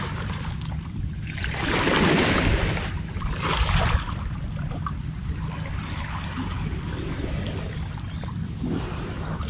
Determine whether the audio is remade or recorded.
remade